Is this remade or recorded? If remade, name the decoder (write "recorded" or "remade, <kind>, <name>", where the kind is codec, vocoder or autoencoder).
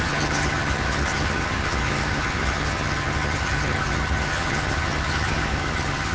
remade, vocoder, HiFi-GAN